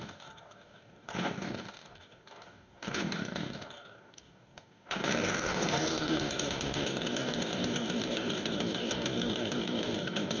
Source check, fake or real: fake